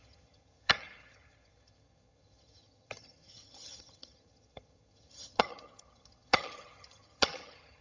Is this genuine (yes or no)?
no